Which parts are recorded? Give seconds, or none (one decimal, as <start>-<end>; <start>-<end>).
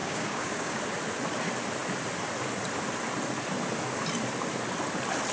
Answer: 0.8-5.3